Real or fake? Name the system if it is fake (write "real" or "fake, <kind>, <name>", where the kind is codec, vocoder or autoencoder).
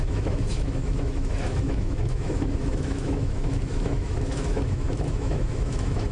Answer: fake, autoencoder, DAC-VAE